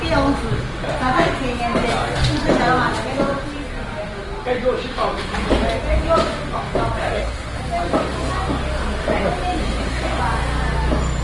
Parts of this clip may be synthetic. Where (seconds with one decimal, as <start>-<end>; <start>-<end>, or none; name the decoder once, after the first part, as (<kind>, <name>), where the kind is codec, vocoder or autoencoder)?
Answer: 7.0-7.6 (codec, SNAC); 9.6-10.2